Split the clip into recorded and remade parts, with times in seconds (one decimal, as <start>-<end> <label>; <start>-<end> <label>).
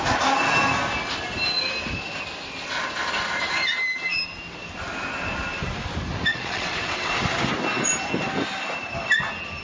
0.0-6.3 recorded; 6.3-7.1 remade; 7.1-9.6 recorded